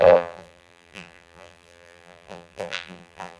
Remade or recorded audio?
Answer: remade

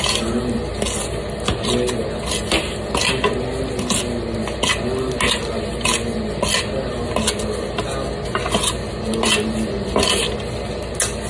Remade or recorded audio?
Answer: recorded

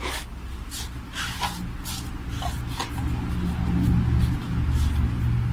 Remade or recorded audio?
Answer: recorded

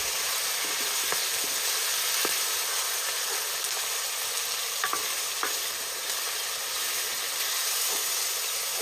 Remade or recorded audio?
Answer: recorded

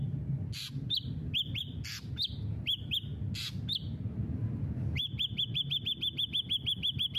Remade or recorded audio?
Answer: recorded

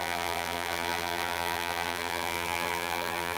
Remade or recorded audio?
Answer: remade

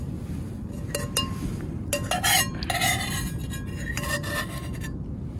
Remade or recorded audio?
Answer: recorded